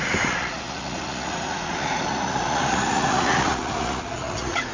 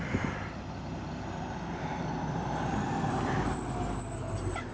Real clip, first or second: second